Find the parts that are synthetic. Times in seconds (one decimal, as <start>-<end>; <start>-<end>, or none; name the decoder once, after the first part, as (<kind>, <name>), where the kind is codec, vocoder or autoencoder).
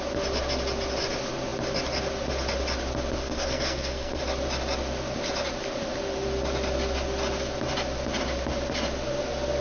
3.2-4.2 (codec, SNAC)